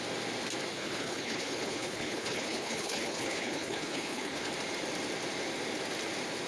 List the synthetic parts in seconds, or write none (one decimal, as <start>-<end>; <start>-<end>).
0.7-4.5